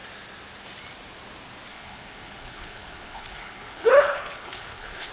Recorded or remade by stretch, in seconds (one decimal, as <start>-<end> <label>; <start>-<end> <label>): 0.0-1.7 recorded; 1.7-5.1 remade